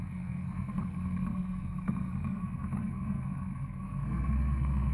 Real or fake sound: fake